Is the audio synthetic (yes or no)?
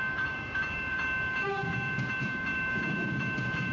yes